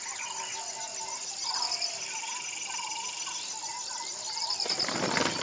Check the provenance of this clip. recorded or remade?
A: recorded